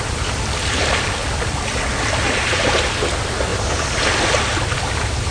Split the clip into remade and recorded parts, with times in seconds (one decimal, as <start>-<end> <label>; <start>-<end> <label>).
0.0-1.2 recorded; 1.2-1.8 remade; 1.8-5.3 recorded